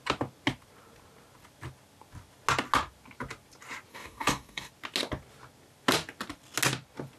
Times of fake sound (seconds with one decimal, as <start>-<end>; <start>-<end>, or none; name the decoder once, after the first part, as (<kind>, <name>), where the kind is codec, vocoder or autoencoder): 3.9-4.7 (codec, DAC)

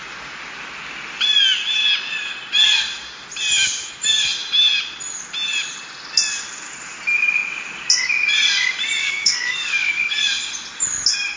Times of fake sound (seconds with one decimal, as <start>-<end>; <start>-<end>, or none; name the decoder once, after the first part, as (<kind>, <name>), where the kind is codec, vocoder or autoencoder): 9.0-10.2 (codec, DAC)

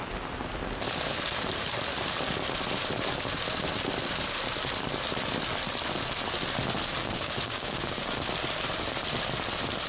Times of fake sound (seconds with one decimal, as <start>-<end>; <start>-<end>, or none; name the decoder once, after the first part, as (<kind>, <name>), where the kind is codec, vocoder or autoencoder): 7.0-8.1 (codec, DAC)

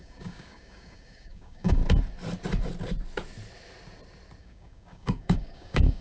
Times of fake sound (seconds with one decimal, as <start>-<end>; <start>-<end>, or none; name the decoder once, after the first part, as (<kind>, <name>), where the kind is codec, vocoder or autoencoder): 0.0-1.8 (codec, DAC); 4.4-6.0

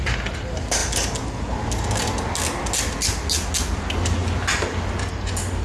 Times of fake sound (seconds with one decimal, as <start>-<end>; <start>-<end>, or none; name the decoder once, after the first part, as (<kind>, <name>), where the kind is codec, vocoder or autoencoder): none